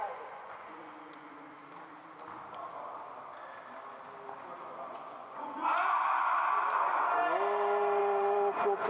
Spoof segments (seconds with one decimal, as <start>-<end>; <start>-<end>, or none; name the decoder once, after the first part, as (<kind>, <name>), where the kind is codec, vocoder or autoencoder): 0.0-1.6 (vocoder, Vocos); 4.6-7.2; 8.0-8.9